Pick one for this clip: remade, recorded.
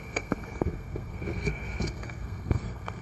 remade